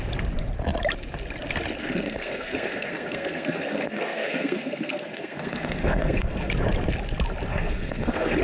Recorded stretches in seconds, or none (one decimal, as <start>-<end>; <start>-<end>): 0.0-1.8; 6.5-7.5